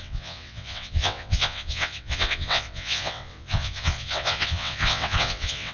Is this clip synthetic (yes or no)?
yes